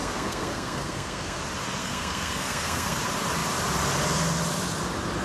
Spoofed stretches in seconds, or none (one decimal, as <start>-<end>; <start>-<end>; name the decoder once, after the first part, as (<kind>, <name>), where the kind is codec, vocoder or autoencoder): 0.0-1.4 (codec, SNAC); 1.8-3.0